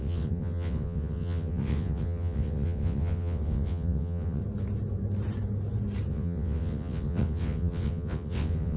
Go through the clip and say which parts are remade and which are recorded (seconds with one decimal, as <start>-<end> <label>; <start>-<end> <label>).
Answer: 0.0-4.4 remade; 4.4-6.1 recorded; 6.1-8.8 remade